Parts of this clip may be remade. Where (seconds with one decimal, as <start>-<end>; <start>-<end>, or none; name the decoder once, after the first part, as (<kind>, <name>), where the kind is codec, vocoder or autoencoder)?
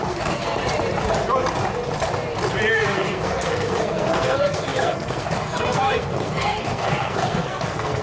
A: 0.0-0.6 (codec, SNAC); 2.7-8.0